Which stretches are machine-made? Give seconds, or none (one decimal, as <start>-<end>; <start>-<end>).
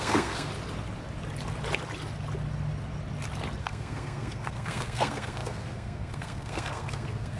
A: 0.0-0.5; 3.6-7.4